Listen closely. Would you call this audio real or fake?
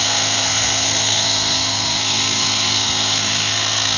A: fake